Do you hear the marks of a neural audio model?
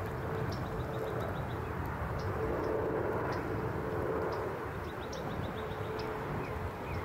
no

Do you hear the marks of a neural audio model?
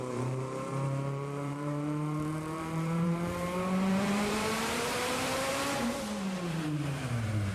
yes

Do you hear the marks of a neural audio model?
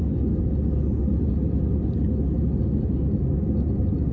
no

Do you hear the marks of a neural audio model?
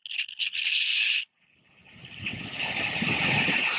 no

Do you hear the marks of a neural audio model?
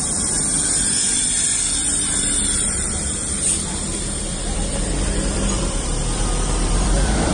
yes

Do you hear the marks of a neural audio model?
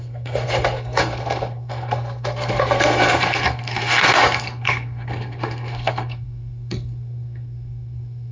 yes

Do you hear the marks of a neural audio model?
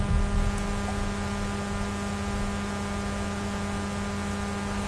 no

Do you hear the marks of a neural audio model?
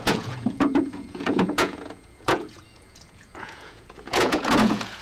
yes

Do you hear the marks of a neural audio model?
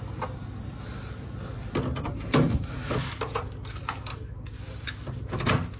no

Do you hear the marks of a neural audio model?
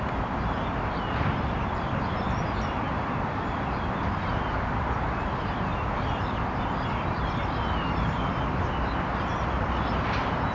no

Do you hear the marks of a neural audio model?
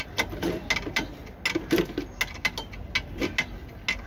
no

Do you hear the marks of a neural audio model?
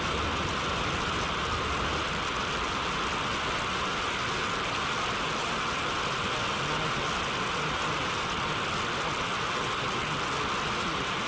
no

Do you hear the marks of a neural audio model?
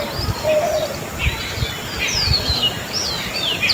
no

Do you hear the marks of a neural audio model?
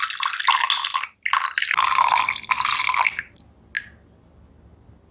no